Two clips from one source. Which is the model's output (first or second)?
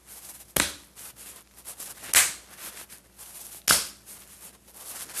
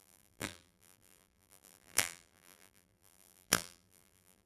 second